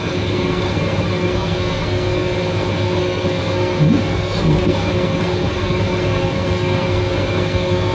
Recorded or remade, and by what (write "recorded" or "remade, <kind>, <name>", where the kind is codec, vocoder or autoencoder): remade, codec, SNAC